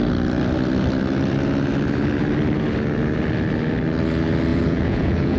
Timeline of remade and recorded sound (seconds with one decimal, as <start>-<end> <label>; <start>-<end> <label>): 0.0-4.5 recorded; 4.5-5.4 remade